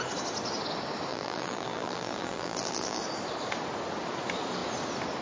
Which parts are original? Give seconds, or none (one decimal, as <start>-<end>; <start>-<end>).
0.0-1.1; 3.0-5.2

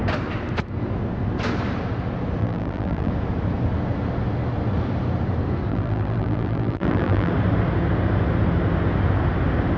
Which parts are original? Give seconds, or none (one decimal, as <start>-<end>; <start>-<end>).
0.0-2.4; 3.1-5.7; 7.3-9.8